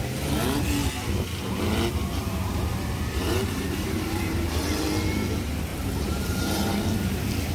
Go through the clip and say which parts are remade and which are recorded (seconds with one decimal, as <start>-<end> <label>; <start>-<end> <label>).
0.0-2.2 recorded; 2.2-4.7 remade; 4.7-5.7 recorded; 5.7-6.7 remade; 6.7-7.5 recorded